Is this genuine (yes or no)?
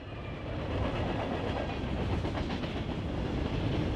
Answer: yes